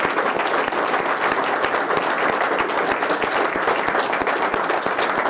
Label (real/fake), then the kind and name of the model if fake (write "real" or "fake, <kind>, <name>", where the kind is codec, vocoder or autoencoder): real